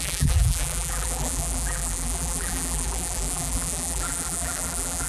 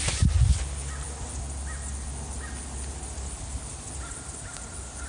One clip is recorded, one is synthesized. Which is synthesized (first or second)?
first